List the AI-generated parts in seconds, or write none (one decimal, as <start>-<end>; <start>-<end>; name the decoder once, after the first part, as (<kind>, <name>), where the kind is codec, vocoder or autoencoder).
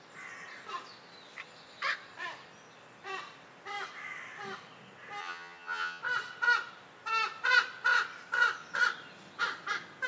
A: 5.2-6.0 (vocoder, HiFi-GAN)